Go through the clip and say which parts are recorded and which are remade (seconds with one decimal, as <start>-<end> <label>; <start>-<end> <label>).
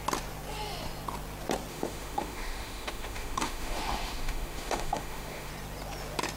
0.0-1.7 recorded; 1.7-5.5 remade; 5.5-6.4 recorded